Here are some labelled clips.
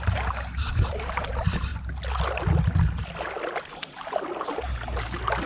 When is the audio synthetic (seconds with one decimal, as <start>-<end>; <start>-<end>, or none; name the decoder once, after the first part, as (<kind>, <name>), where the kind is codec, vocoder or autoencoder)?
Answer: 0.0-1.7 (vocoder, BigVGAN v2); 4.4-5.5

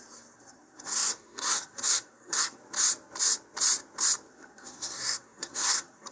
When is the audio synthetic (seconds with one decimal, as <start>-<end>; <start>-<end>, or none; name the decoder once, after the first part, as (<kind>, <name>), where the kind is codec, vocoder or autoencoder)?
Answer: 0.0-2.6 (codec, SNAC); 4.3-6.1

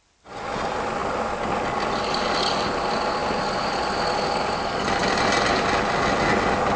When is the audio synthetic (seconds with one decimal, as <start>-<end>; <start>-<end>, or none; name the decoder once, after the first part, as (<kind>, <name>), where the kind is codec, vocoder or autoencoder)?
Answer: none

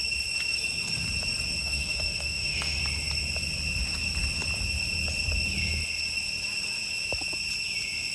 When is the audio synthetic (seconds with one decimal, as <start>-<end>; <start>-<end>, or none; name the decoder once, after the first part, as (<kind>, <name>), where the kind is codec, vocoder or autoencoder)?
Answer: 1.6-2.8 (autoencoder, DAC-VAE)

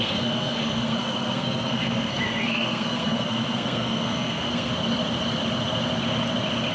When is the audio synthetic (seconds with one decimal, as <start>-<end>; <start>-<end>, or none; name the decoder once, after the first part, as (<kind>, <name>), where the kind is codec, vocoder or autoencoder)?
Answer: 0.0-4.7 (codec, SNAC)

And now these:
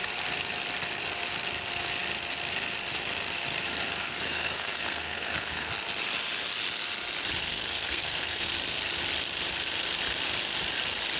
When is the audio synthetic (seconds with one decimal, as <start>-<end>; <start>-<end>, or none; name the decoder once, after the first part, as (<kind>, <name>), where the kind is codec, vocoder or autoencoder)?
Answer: 4.0-5.7 (codec, SNAC); 7.4-8.5

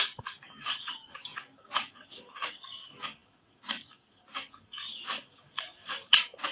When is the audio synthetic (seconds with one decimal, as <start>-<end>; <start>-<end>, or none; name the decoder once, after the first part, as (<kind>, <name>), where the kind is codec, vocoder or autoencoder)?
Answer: 0.0-6.5 (codec, DAC)

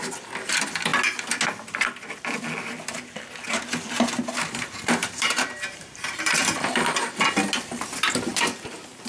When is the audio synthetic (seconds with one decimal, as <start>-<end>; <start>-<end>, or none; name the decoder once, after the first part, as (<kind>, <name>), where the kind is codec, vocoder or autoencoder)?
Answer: 5.0-6.5 (vocoder, BigVGAN v2)